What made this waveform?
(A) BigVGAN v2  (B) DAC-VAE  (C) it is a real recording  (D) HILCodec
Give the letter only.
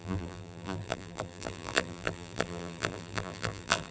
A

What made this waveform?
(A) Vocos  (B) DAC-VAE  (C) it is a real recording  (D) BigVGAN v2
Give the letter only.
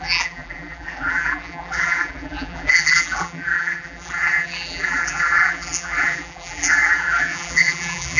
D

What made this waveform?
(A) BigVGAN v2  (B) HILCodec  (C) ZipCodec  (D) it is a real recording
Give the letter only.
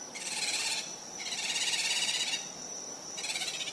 A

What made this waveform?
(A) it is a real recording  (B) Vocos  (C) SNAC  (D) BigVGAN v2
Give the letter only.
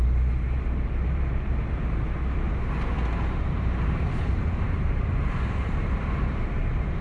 D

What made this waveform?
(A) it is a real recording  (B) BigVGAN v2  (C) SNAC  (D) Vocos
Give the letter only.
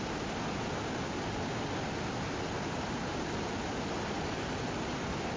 A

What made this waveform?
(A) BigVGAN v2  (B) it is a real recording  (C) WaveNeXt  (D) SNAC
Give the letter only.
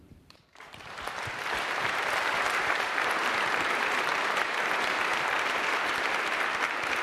A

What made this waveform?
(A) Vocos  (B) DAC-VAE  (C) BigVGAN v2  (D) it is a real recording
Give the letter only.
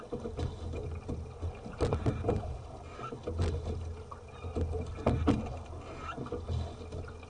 D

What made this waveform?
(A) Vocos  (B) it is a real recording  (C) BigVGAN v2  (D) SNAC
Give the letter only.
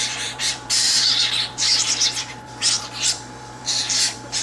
C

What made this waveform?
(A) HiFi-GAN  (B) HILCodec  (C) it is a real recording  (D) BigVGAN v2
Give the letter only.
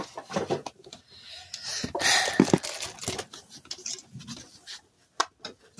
C